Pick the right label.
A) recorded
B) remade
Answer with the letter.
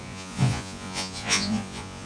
B